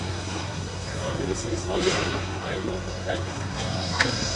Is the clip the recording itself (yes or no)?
no